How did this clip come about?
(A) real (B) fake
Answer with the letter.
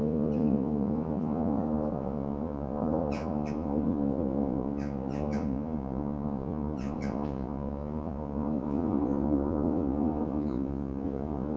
B